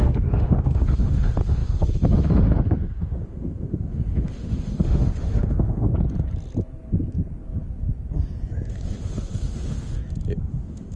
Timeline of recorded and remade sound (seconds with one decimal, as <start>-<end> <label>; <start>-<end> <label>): 0.0-5.9 remade; 5.9-8.7 recorded; 8.7-10.0 remade; 10.0-10.5 recorded; 10.5-11.0 remade